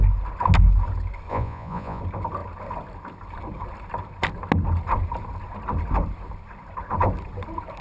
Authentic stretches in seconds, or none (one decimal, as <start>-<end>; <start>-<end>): 0.0-1.3; 2.0-7.8